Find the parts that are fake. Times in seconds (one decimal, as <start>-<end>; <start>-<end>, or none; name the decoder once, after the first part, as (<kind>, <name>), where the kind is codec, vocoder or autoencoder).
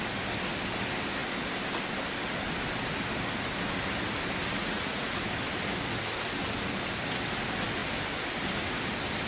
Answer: 4.6-5.2 (vocoder, Vocos)